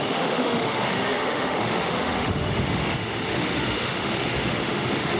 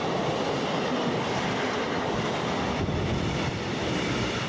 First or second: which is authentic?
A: second